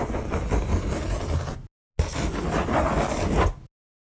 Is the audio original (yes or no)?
yes